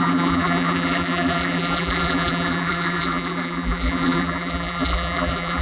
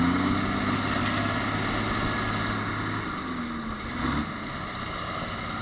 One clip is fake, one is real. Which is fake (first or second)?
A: first